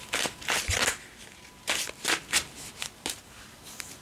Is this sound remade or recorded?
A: recorded